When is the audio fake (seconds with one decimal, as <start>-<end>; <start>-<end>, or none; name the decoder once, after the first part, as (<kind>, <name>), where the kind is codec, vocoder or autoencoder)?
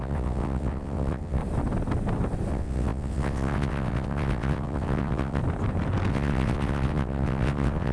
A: 0.0-1.4 (vocoder, WaveNeXt); 2.5-5.4; 6.1-7.9